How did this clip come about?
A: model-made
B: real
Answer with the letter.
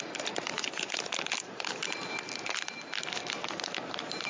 B